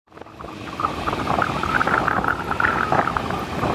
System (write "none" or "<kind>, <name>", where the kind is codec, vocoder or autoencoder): none